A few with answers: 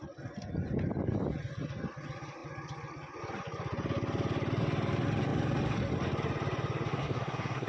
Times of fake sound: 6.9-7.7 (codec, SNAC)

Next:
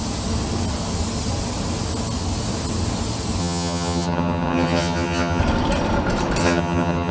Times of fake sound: 3.4-5.4 (vocoder, HiFi-GAN); 6.4-7.1

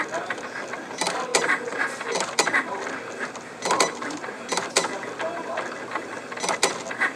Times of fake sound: none

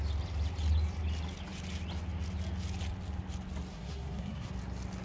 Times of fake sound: 3.7-4.5 (codec, SNAC)